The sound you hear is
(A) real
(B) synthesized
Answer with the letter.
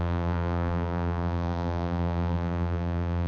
B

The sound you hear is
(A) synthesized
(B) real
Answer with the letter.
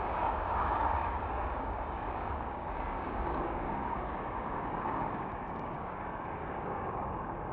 A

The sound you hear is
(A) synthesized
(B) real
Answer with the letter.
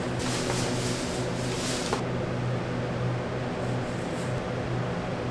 B